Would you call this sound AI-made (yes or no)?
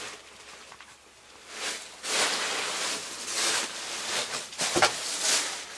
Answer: no